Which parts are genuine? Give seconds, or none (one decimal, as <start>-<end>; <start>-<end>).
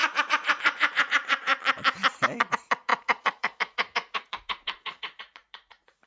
1.5-2.5